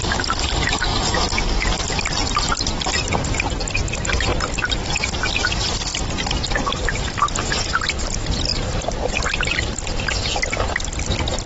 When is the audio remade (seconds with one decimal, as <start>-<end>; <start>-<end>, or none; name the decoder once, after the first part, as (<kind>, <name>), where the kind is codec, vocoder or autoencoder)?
0.9-2.3 (vocoder, BigVGAN v2); 8.5-9.2